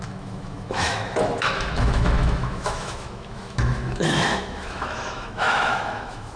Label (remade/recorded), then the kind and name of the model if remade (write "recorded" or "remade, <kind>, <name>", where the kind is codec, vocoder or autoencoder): remade, autoencoder, DAC-VAE